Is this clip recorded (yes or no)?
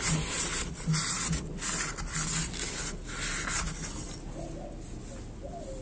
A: yes